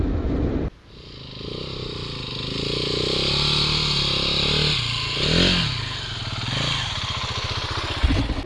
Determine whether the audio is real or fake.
real